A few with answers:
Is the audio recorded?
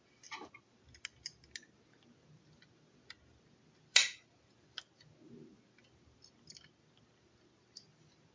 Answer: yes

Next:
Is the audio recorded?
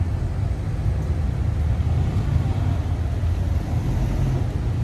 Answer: yes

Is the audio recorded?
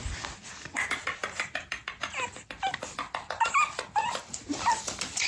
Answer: yes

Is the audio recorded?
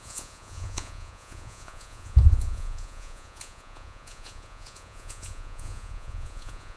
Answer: no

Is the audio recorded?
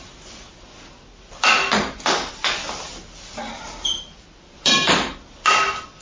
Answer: yes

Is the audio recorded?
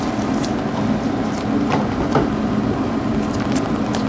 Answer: yes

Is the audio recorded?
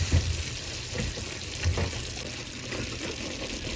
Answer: yes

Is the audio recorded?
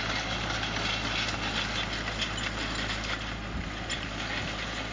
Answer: yes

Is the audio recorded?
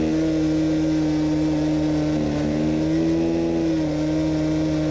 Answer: yes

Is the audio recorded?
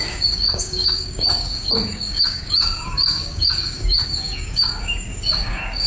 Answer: no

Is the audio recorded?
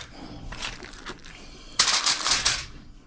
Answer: no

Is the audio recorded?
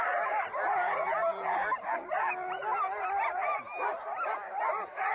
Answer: yes